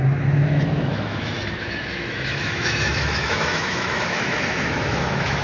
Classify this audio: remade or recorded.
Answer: remade